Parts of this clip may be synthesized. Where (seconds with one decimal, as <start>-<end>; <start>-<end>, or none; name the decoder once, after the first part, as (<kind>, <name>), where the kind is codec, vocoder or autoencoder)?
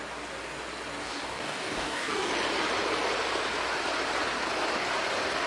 1.0-2.3 (codec, DAC)